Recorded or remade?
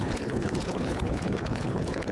remade